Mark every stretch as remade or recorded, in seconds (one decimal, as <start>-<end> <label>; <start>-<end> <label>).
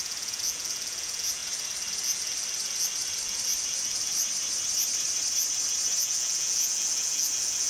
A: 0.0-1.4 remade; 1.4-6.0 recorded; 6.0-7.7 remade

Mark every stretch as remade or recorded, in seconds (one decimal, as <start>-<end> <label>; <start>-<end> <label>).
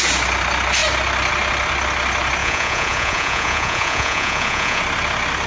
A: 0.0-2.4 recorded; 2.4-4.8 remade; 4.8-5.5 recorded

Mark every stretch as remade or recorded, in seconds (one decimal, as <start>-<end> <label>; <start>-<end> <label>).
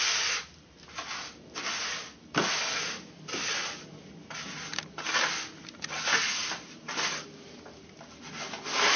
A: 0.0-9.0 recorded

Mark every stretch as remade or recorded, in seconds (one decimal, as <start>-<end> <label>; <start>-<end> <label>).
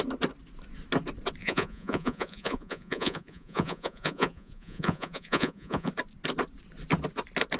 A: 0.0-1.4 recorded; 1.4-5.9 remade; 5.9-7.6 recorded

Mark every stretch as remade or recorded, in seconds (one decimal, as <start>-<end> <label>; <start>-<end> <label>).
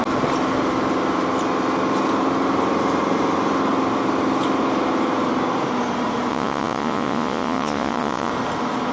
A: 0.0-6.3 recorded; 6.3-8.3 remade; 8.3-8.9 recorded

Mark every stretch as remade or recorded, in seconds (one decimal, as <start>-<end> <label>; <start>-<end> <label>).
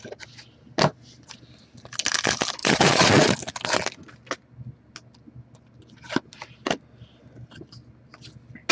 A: 0.0-2.6 recorded; 2.6-3.3 remade; 3.3-8.7 recorded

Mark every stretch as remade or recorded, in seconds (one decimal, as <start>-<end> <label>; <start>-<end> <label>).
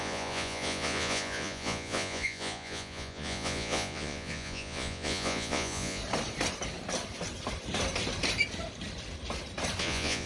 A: 0.0-6.0 remade; 6.0-9.8 recorded; 9.8-10.3 remade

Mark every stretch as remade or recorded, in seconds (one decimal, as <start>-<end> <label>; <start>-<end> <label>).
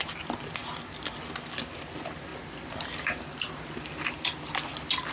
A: 0.0-5.1 recorded